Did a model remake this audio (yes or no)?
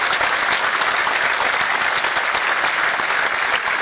no